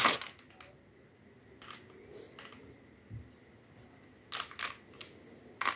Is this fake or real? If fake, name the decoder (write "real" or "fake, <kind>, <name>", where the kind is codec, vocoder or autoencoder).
real